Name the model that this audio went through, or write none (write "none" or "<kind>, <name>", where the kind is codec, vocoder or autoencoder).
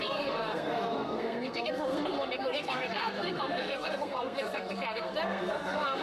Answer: codec, SNAC